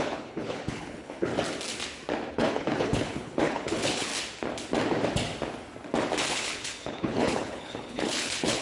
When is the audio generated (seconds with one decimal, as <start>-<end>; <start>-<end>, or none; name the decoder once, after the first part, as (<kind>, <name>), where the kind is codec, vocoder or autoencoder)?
0.0-1.3 (codec, HILCodec); 2.3-4.1; 6.3-8.6